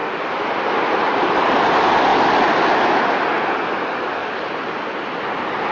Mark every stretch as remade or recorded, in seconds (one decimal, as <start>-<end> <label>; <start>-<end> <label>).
0.0-2.1 remade; 2.1-3.2 recorded; 3.2-5.7 remade